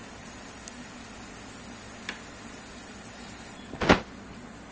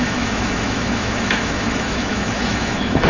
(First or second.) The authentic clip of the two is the first